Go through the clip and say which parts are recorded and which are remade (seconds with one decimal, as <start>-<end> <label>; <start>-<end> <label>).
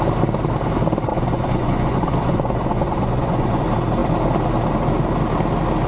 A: 0.0-1.1 recorded; 1.1-3.6 remade; 3.6-5.9 recorded